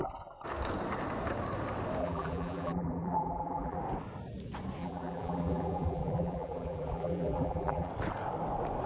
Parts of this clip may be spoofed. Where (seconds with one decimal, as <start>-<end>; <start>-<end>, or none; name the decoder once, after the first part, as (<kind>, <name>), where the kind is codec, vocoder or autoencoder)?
2.0-3.8 (vocoder, BigVGAN v2); 4.8-7.9